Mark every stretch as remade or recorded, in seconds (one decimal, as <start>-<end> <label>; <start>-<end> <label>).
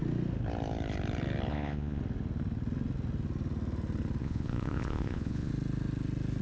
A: 0.0-1.5 recorded; 1.5-2.0 remade; 2.0-4.2 recorded; 4.2-5.5 remade; 5.5-6.4 recorded